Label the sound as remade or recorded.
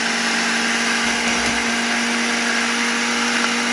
recorded